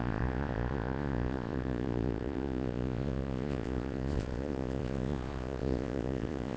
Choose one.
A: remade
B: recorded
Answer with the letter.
A